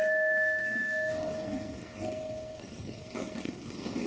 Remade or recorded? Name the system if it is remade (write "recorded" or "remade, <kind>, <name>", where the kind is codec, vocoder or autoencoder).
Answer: remade, codec, SNAC